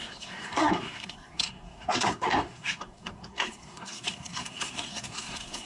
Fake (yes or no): yes